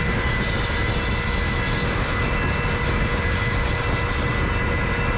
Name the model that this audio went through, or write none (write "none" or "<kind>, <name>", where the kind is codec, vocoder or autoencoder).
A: none